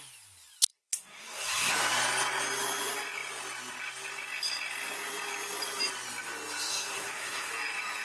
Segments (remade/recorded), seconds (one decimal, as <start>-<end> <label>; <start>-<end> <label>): 0.0-0.7 recorded; 0.7-1.7 remade; 1.7-6.7 recorded; 6.7-7.5 remade; 7.5-8.0 recorded

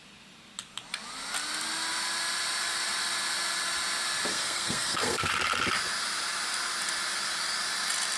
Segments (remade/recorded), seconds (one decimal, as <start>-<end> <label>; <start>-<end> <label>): 0.0-4.3 recorded; 4.3-5.3 remade; 5.3-8.2 recorded

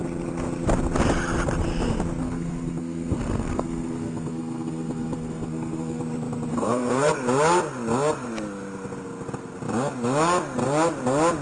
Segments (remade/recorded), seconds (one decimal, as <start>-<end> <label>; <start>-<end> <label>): 0.0-2.2 recorded; 2.2-6.0 remade; 6.0-6.5 recorded; 6.5-7.1 remade; 7.1-11.4 recorded

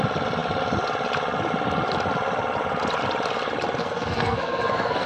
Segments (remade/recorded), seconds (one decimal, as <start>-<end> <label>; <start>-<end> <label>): 0.0-3.8 recorded; 3.8-5.1 remade

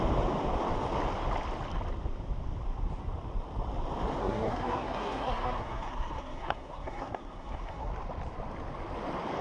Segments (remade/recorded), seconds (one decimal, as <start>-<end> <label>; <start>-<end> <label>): 0.0-4.2 recorded; 4.2-7.9 remade; 7.9-9.4 recorded

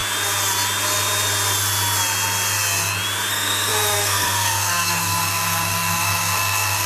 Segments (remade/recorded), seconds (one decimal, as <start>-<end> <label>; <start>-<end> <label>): 0.0-3.3 recorded; 3.3-6.9 remade

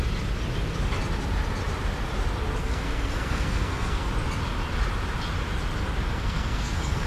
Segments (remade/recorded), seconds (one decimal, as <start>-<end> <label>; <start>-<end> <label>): 0.0-2.6 recorded; 2.6-4.1 remade; 4.1-6.1 recorded; 6.1-7.1 remade

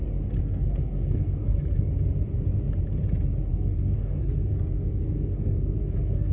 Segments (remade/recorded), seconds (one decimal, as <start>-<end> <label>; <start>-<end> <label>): 0.0-0.4 recorded; 0.4-1.9 remade; 1.9-3.5 recorded; 3.5-6.3 remade